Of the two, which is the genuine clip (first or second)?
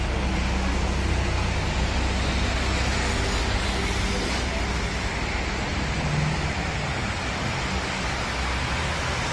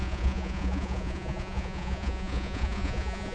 first